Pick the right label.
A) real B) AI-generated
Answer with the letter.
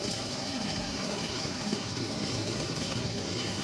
B